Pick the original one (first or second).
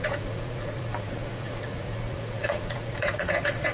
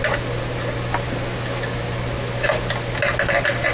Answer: second